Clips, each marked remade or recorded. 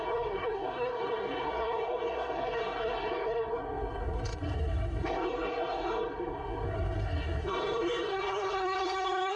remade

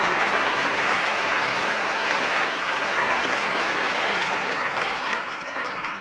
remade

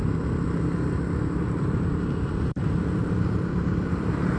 recorded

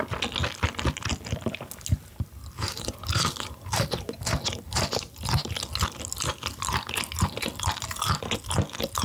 recorded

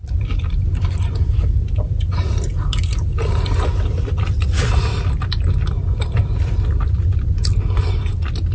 recorded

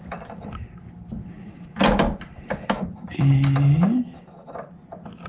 recorded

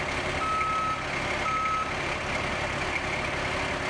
recorded